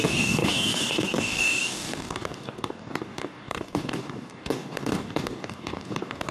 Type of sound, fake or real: fake